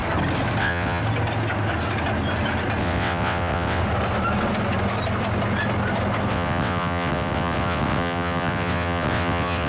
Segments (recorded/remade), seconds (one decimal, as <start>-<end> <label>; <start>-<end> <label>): 0.0-0.6 recorded; 0.6-1.0 remade; 1.0-2.8 recorded; 2.8-3.8 remade; 3.8-6.3 recorded; 6.3-9.7 remade

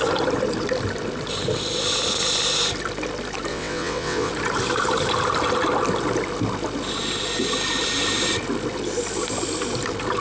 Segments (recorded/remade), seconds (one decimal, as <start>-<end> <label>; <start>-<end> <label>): 0.0-3.5 recorded; 3.5-4.3 remade; 4.3-10.2 recorded

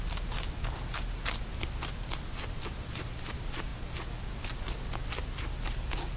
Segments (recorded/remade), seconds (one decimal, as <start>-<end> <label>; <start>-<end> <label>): 0.0-6.2 recorded

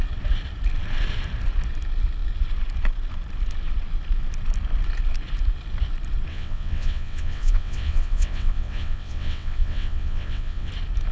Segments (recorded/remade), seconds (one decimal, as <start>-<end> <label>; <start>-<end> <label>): 0.0-6.3 recorded; 6.3-10.7 remade; 10.7-11.1 recorded

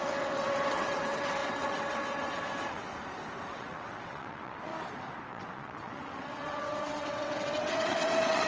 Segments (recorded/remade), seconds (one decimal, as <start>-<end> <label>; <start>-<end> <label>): 0.0-2.9 remade; 2.9-3.5 recorded; 3.5-4.7 remade; 4.7-5.3 recorded; 5.3-8.5 remade

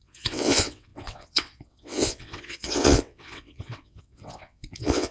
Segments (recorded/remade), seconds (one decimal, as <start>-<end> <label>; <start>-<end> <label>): 0.0-5.1 remade

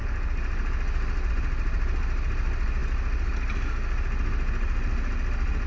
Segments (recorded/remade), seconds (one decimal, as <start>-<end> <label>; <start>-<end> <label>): 0.0-5.7 recorded

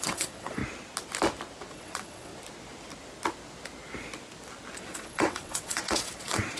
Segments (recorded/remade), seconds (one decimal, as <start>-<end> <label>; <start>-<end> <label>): 0.0-0.6 remade; 0.6-1.7 recorded; 1.7-2.3 remade; 2.3-4.8 recorded; 4.8-6.6 remade